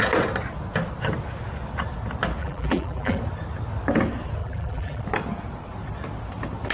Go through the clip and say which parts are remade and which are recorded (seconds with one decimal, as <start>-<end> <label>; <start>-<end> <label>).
0.0-2.4 recorded; 2.4-3.2 remade; 3.2-4.4 recorded; 4.4-5.0 remade; 5.0-6.7 recorded